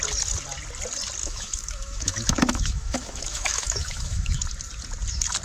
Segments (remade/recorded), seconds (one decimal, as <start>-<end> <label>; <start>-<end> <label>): 0.0-1.2 recorded; 1.2-4.4 remade; 4.4-5.4 recorded